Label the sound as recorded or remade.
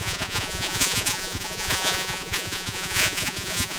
remade